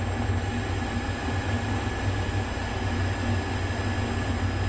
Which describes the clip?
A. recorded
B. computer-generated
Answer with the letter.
A